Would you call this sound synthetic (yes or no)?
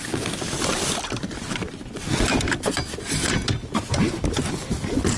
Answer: no